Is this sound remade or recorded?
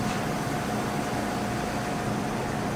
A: remade